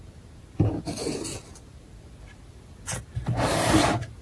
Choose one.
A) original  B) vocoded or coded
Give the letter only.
A